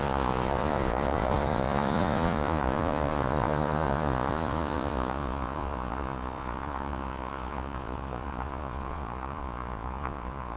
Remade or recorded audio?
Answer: remade